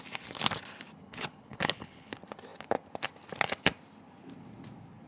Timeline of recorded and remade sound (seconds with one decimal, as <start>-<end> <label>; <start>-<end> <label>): 0.0-1.0 recorded; 1.0-2.1 remade; 2.1-5.1 recorded